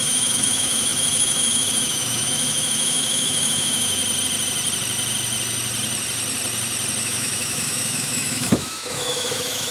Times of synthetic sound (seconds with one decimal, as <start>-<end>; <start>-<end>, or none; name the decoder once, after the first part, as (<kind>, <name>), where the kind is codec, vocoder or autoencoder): 0.0-4.0 (autoencoder, DAC-VAE); 7.0-9.7